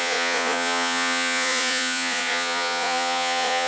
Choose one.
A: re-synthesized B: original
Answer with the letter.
A